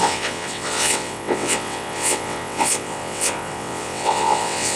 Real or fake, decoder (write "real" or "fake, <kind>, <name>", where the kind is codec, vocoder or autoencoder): fake, vocoder, WaveNeXt